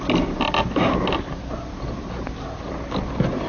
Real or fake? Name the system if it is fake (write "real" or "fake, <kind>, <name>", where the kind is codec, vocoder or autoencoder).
real